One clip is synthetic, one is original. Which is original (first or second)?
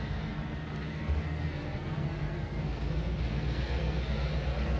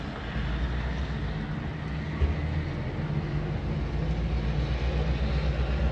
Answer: second